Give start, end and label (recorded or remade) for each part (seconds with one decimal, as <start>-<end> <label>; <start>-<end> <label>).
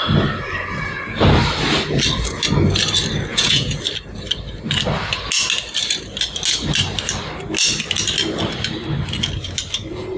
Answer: 0.0-3.3 recorded; 3.3-3.8 remade; 3.8-10.2 recorded